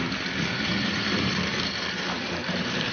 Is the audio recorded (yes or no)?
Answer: no